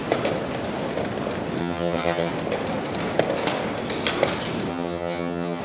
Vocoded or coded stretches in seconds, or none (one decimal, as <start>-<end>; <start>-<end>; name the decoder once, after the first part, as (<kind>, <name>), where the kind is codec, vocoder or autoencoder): 1.6-2.3 (vocoder, HiFi-GAN); 4.7-5.6

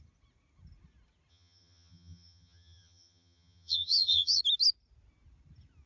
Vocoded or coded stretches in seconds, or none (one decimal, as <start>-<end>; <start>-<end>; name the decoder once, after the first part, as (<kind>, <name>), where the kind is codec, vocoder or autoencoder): 1.3-4.4 (vocoder, HiFi-GAN)

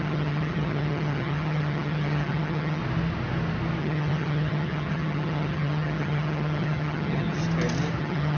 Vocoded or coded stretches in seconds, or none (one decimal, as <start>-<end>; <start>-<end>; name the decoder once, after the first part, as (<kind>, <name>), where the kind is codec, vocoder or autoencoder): 0.0-2.8 (vocoder, HiFi-GAN); 3.8-7.4; 8.0-8.4

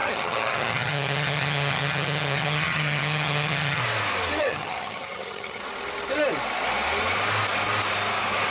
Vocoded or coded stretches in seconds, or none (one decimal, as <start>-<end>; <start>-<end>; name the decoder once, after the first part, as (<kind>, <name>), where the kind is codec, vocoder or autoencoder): 0.0-3.8 (vocoder, HiFi-GAN); 4.4-5.6

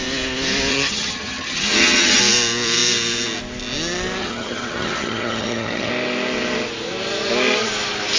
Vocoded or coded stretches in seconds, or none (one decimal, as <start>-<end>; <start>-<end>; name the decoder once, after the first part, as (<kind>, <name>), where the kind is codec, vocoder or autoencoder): 0.7-2.2 (vocoder, HiFi-GAN); 4.2-5.9

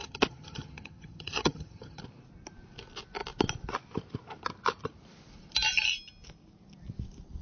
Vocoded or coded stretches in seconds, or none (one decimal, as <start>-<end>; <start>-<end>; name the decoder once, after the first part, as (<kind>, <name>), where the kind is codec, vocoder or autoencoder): 0.0-2.0 (vocoder, HiFi-GAN)

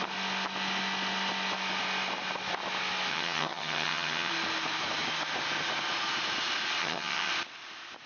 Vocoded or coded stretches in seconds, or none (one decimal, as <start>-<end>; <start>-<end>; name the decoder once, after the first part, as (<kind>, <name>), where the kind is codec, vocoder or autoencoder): 3.1-4.3 (vocoder, HiFi-GAN); 6.8-7.3